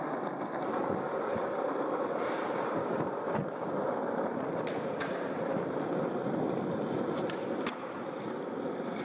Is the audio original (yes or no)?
yes